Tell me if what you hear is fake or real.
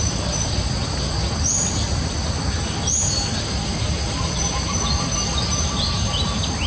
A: real